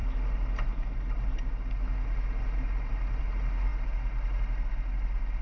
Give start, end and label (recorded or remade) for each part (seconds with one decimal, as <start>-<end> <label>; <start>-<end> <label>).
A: 0.0-5.4 recorded